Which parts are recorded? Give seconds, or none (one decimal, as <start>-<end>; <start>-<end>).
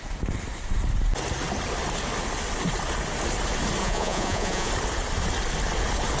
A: 0.0-3.8; 4.7-6.2